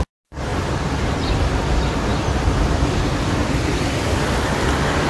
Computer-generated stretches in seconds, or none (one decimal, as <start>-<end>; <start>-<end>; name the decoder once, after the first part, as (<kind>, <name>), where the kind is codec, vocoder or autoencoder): none

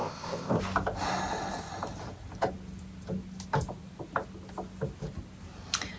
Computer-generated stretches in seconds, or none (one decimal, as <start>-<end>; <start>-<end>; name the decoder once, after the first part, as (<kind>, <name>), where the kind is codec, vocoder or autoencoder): 0.0-0.6 (codec, ZipCodec)

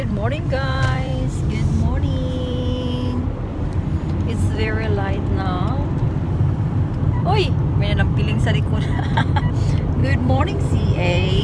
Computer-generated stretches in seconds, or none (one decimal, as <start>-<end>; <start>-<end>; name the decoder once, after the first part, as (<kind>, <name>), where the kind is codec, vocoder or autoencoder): 0.0-1.1 (vocoder, BigVGAN v2); 2.4-11.4

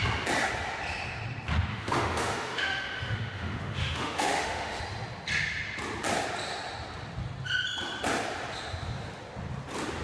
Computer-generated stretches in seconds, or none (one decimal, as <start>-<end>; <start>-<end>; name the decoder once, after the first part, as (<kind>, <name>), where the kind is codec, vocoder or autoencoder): 1.7-4.8 (autoencoder, DAC-VAE)

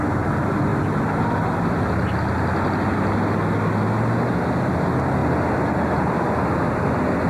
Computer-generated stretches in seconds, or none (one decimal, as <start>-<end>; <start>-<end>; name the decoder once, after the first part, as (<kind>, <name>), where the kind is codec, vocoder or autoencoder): none

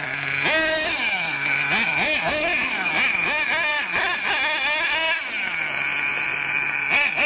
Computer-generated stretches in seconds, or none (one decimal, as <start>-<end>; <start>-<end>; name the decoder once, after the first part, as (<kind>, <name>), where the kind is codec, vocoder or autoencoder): 3.7-4.3 (vocoder, BigVGAN v2); 6.1-7.3

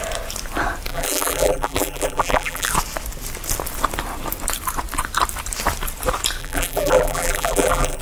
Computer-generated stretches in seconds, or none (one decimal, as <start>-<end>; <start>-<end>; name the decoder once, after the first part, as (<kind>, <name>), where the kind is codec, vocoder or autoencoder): 0.9-2.7 (vocoder, BigVGAN v2); 6.4-8.0

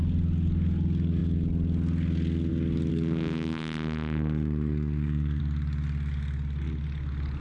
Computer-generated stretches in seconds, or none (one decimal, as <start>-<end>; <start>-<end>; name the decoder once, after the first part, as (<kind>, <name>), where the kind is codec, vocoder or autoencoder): 2.9-5.4 (codec, SNAC)